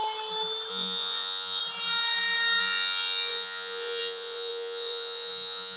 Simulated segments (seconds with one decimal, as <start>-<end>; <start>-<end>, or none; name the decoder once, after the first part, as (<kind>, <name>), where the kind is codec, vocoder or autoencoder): 0.7-1.6 (vocoder, Vocos); 2.6-5.8